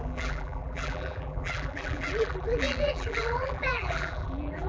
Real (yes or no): no